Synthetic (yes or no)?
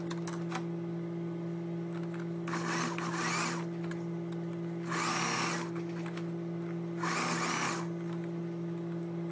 no